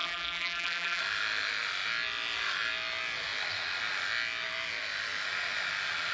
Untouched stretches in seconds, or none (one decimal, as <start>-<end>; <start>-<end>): 1.0-6.1